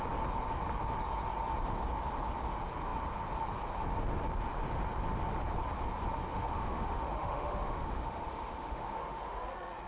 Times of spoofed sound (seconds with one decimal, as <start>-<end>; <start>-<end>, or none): 6.3-9.4

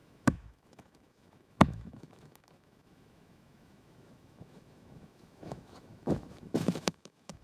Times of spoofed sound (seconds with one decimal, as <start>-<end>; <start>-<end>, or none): 0.0-7.4

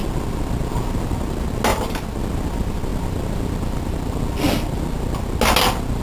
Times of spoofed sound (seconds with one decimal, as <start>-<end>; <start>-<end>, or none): none

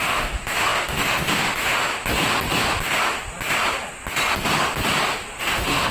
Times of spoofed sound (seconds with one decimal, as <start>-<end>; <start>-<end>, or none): 0.0-1.9; 5.4-5.9

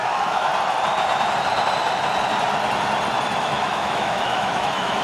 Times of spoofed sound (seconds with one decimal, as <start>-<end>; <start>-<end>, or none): 0.0-0.5; 3.4-5.0

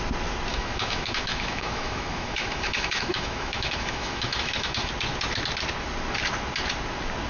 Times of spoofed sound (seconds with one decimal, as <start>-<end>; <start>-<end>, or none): 0.5-4.9

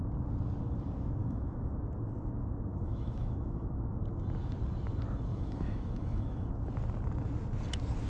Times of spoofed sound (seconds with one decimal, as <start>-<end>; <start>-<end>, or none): 1.2-1.7; 2.7-4.0; 5.3-6.5

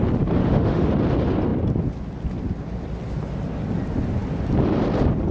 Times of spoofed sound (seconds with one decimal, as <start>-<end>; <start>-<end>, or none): 0.4-0.9